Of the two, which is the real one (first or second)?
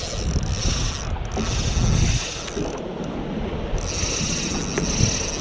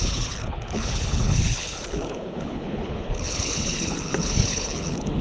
first